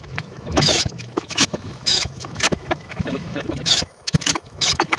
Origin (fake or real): fake